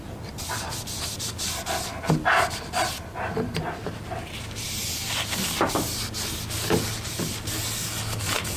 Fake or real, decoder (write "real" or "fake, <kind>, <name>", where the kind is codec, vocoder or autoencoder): real